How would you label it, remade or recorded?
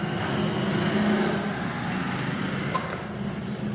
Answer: recorded